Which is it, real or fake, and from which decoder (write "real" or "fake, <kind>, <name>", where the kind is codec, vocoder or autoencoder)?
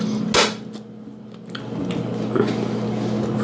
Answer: real